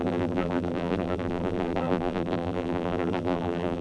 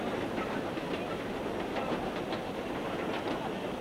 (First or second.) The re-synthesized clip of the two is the first